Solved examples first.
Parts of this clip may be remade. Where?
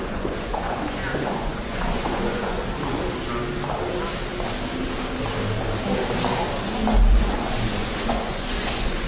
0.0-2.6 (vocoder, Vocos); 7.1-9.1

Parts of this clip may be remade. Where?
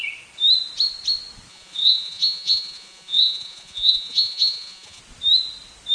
1.5-5.0 (vocoder, Vocos)